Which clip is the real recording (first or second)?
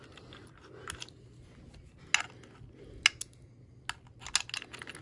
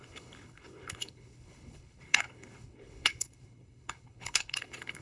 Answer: first